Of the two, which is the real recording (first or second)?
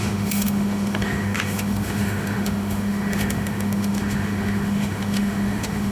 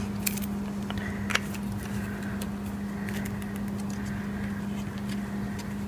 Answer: second